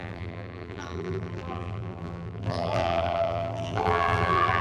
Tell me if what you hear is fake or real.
fake